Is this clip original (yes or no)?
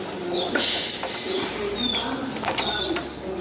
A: yes